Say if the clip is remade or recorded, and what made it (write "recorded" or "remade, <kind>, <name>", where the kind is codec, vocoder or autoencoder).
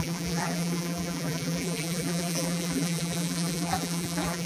remade, vocoder, BigVGAN v2